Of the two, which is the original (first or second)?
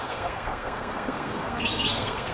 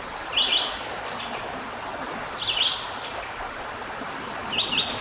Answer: second